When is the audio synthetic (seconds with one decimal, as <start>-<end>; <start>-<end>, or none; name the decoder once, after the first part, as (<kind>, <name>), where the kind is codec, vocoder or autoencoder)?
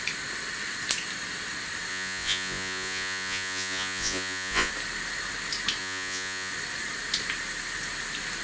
1.9-4.7 (vocoder, Vocos); 5.8-6.5